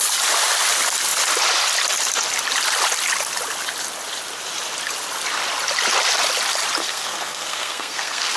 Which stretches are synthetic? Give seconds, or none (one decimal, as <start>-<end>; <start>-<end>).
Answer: 6.8-8.4